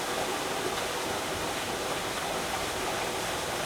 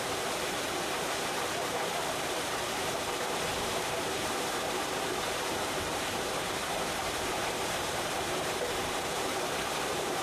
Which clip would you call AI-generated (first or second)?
second